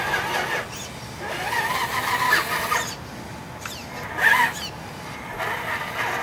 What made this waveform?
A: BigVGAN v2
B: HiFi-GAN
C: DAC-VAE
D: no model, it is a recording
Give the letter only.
D